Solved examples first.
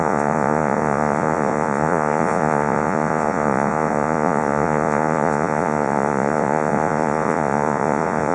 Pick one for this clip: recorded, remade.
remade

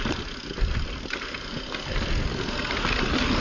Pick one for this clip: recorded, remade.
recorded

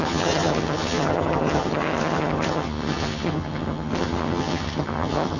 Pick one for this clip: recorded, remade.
remade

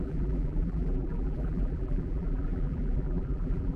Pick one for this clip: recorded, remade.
remade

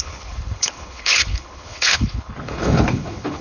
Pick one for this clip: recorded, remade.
remade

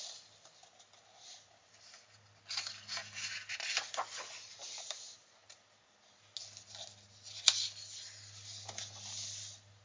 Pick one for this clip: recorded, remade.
recorded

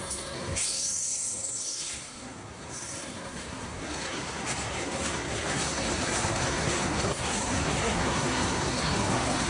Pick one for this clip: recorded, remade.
remade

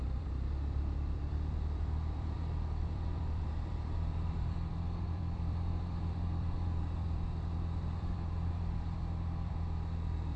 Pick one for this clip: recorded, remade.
remade